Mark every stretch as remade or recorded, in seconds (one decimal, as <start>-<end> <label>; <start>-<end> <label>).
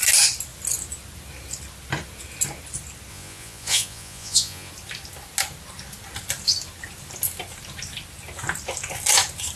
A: 0.0-3.1 recorded; 3.1-4.7 remade; 4.7-9.6 recorded